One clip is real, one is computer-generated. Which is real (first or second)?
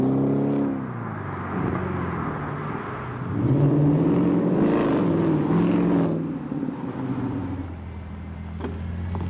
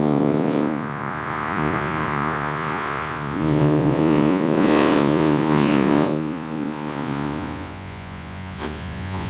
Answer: first